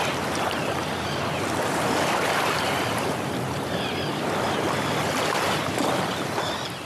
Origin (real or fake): fake